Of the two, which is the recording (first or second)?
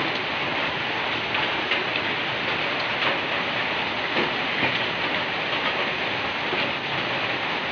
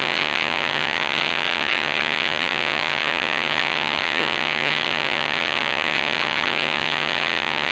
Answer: first